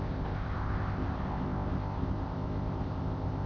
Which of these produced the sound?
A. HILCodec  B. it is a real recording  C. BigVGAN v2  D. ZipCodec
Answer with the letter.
D